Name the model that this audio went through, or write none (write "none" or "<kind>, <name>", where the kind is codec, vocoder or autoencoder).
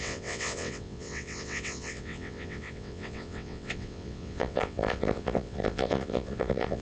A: vocoder, WaveNeXt